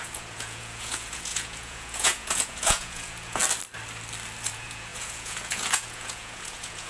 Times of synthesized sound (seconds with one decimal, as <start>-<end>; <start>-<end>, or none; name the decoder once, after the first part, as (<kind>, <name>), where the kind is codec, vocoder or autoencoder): 0.0-3.4 (vocoder, Vocos); 4.5-6.9